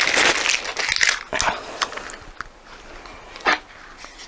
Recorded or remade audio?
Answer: recorded